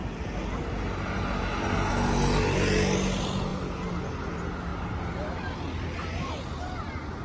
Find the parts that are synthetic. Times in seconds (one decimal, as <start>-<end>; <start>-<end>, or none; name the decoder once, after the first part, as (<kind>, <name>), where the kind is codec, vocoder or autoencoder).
none